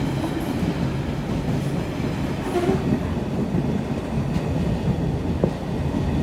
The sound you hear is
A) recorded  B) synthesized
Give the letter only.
A